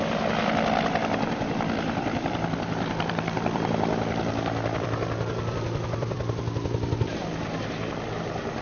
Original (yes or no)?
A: no